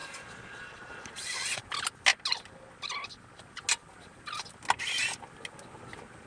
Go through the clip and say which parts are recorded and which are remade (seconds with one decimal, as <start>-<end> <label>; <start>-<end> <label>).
0.0-1.6 remade; 1.6-6.3 recorded